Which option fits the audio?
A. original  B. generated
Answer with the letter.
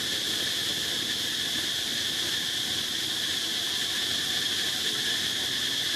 B